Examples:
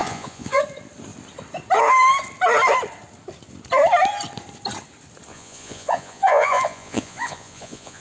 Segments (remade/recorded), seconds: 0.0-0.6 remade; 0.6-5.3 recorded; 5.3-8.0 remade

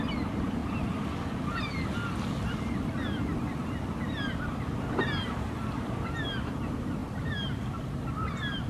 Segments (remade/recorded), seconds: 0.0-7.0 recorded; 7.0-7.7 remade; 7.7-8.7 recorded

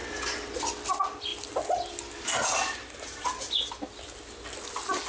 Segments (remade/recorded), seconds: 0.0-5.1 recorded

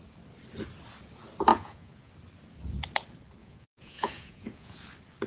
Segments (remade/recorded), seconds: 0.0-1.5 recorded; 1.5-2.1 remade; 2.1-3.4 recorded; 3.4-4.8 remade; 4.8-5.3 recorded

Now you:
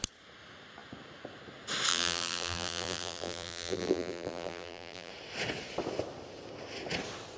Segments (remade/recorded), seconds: 0.0-1.9 recorded; 1.9-5.1 remade; 5.1-7.4 recorded